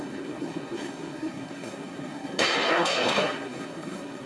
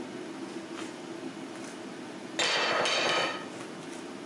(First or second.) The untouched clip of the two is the second